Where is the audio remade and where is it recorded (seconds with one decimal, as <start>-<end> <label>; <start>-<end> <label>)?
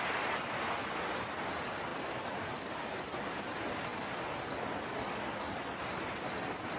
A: 0.0-6.8 recorded